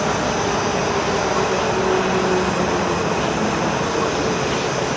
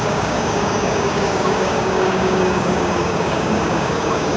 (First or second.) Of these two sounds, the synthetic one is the second